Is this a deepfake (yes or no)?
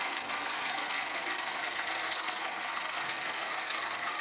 yes